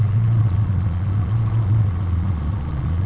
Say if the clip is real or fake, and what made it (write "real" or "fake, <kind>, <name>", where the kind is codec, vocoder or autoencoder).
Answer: fake, vocoder, Vocos